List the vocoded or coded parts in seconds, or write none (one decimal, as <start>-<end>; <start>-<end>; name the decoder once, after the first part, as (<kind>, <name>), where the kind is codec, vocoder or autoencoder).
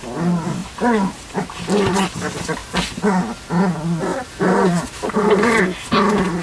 0.6-2.1 (vocoder, BigVGAN v2); 4.1-5.6